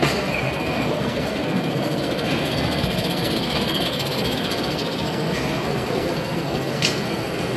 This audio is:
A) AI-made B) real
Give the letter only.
A